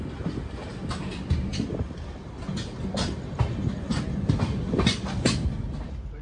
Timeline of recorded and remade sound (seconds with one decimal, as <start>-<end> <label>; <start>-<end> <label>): 0.0-6.2 recorded